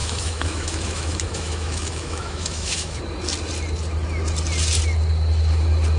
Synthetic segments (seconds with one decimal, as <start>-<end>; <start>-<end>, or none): 0.0-3.0